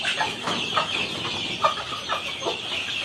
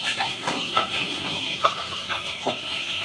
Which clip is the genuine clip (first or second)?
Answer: first